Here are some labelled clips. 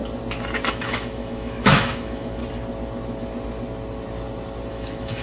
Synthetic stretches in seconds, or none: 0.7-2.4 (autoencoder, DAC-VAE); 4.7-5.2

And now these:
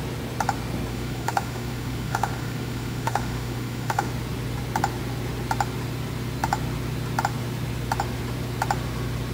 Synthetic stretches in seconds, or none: 0.9-4.1 (autoencoder, DAC-VAE)

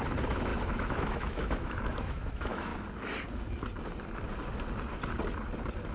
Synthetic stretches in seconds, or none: 0.0-2.7 (autoencoder, DAC-VAE)

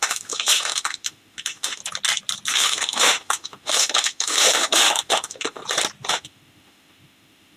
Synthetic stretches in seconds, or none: 0.0-1.8 (autoencoder, DAC-VAE); 2.5-5.6; 6.1-7.6

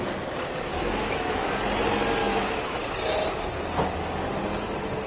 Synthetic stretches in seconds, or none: 0.7-1.6 (autoencoder, DAC-VAE); 2.2-2.8